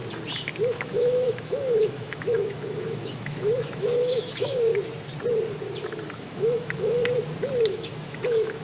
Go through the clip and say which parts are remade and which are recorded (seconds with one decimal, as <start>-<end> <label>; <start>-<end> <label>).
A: 0.0-0.6 recorded; 0.6-4.7 remade; 4.7-6.2 recorded; 6.2-7.0 remade; 7.0-7.6 recorded; 7.6-8.6 remade